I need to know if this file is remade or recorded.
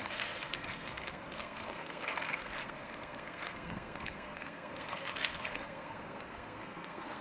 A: remade